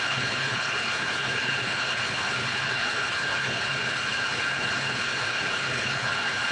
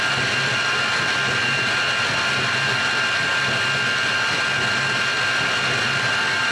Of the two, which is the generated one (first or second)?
first